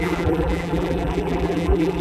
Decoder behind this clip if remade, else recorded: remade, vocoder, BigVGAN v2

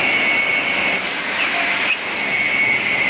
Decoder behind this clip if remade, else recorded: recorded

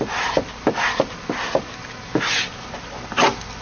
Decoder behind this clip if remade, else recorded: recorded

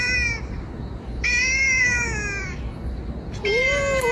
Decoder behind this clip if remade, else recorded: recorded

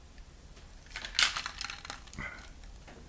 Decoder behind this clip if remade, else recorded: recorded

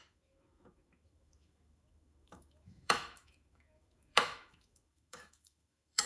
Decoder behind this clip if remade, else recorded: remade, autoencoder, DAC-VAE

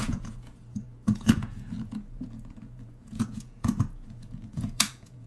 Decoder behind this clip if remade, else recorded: remade, vocoder, Vocos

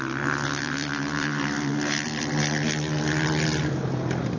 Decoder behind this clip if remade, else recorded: recorded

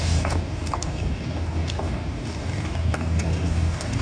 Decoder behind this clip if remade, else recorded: remade, codec, DAC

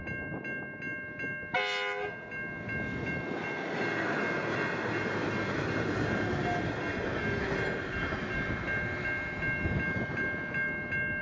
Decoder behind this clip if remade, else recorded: recorded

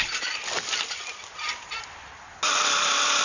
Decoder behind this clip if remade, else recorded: recorded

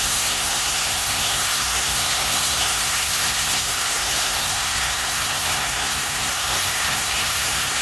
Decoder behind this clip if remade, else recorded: remade, codec, SNAC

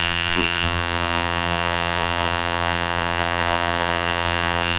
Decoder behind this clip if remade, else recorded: remade, vocoder, BigVGAN v2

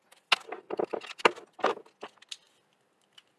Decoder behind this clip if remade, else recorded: recorded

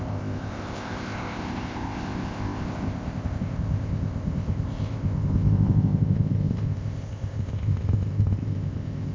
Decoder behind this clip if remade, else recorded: remade, codec, ZipCodec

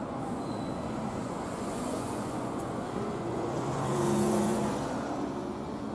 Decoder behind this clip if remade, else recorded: remade, vocoder, Vocos